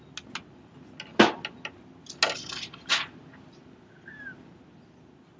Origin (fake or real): real